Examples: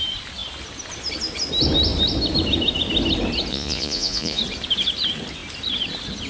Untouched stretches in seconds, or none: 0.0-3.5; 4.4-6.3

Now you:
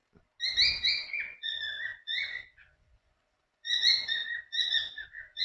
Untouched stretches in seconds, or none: 0.0-0.8

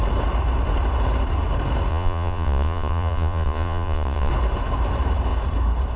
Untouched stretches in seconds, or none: 0.0-1.9; 4.3-6.0

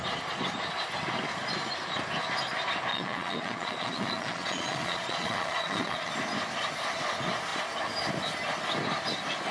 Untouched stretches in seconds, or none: 0.0-2.9; 6.1-9.5

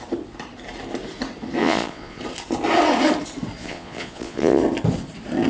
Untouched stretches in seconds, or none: 0.0-1.6; 2.2-3.6; 4.6-5.5